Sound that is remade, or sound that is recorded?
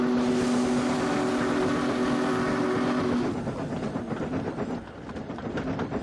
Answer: recorded